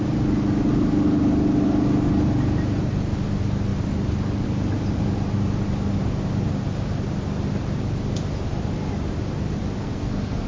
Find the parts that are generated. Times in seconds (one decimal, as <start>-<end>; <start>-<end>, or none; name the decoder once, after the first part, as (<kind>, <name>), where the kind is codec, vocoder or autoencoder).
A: 9.8-10.5 (codec, SNAC)